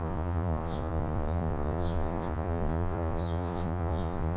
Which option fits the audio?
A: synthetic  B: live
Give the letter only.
A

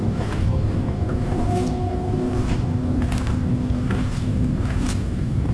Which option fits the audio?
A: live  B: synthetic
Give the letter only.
B